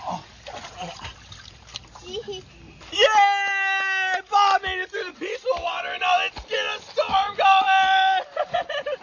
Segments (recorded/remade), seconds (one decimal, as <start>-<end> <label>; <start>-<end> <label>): 0.0-0.8 recorded; 0.8-2.2 remade; 2.2-5.1 recorded; 5.1-5.8 remade; 5.8-9.0 recorded